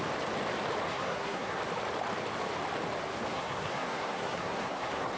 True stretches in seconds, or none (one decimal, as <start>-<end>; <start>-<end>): 0.0-0.9; 1.6-3.3